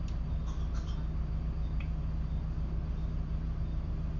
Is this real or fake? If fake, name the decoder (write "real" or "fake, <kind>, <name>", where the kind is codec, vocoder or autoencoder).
real